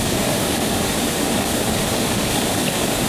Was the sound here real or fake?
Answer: fake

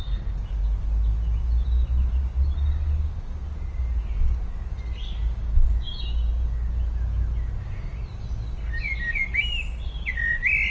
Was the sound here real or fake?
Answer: real